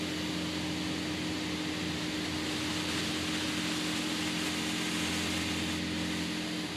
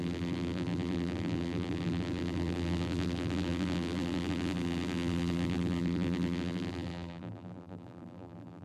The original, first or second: first